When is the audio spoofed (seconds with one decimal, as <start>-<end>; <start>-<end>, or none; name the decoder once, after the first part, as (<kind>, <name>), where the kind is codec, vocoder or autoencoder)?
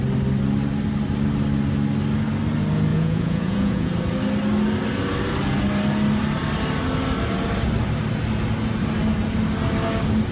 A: 2.9-3.9 (vocoder, Vocos)